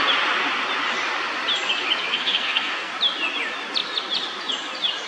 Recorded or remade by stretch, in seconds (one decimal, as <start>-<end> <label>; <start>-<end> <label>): 0.0-2.1 recorded; 2.1-2.9 remade; 2.9-5.1 recorded